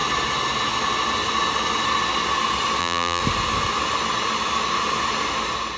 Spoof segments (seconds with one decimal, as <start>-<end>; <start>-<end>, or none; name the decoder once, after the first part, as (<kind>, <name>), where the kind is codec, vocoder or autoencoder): 2.8-3.2 (vocoder, BigVGAN v2)

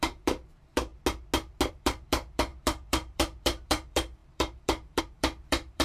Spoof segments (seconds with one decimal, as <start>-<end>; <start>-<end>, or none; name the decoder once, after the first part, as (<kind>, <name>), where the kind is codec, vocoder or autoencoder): 0.0-0.9 (vocoder, BigVGAN v2); 1.7-5.8